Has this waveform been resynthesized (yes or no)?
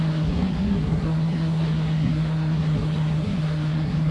yes